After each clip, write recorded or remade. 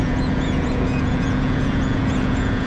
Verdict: remade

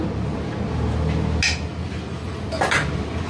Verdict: recorded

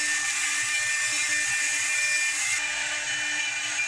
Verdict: recorded